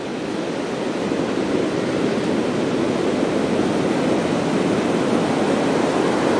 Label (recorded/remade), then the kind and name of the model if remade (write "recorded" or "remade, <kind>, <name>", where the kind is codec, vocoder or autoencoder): recorded